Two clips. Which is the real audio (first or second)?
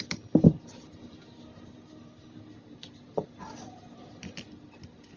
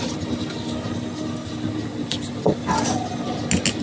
second